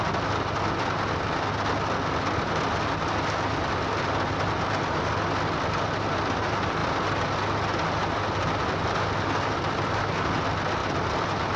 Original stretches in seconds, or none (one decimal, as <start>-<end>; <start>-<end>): 0.0-11.6